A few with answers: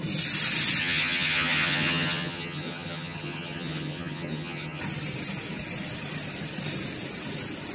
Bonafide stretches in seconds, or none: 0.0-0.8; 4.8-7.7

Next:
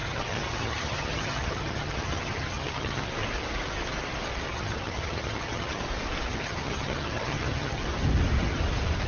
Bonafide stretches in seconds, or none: 3.1-4.5; 5.8-6.3; 7.8-9.1

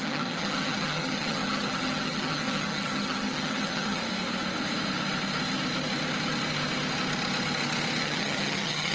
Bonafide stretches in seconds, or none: 4.0-8.0

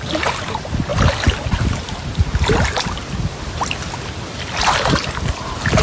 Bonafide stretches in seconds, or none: 0.0-5.8

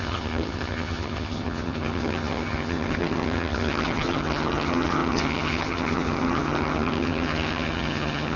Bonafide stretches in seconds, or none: none

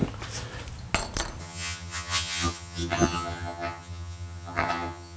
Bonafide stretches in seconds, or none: 0.0-1.4

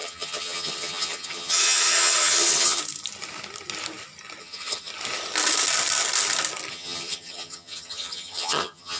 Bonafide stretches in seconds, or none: 2.8-4.4; 4.9-6.7